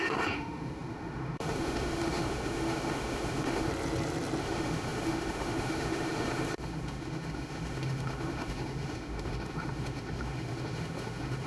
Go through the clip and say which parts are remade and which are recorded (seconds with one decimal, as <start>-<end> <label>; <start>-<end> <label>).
0.0-3.7 remade; 3.7-4.4 recorded; 4.4-11.5 remade